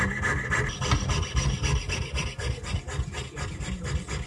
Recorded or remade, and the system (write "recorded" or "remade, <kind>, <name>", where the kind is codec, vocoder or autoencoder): recorded